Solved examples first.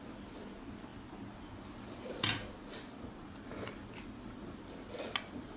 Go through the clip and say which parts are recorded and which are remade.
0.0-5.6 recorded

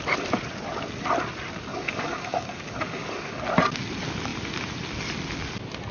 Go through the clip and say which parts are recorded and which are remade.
0.0-1.7 recorded; 1.7-3.4 remade; 3.4-5.9 recorded

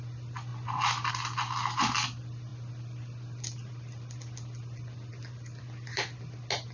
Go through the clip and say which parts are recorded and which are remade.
0.0-6.7 recorded

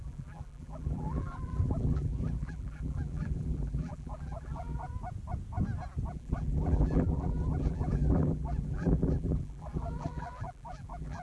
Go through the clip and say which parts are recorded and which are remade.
0.0-4.9 remade; 4.9-6.1 recorded; 6.1-11.2 remade

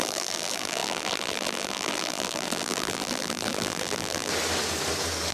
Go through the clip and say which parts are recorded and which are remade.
0.0-4.3 remade; 4.3-5.3 recorded

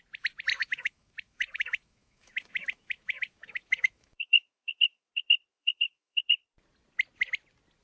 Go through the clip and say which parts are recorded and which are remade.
0.0-0.6 recorded; 0.6-5.1 remade; 5.1-5.5 recorded; 5.5-6.2 remade; 6.2-7.8 recorded

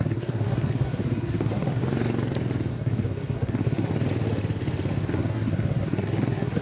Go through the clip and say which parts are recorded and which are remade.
0.0-1.8 remade; 1.8-2.7 recorded; 2.7-3.9 remade; 3.9-5.1 recorded; 5.1-6.6 remade

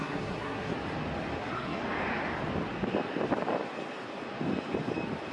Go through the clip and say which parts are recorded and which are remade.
0.0-0.7 remade; 0.7-1.4 recorded; 1.4-1.8 remade; 1.8-5.3 recorded